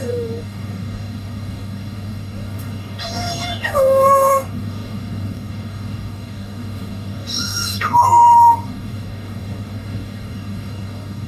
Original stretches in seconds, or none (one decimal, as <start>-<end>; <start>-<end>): none